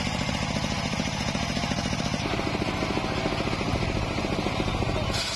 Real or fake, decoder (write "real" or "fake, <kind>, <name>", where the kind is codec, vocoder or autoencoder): real